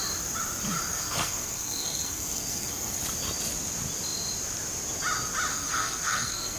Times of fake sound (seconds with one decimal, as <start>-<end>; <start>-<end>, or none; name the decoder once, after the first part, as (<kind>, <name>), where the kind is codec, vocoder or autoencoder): 0.9-3.0 (codec, SNAC); 5.5-6.6